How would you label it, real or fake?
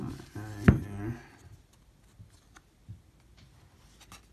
real